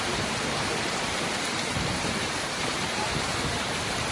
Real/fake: fake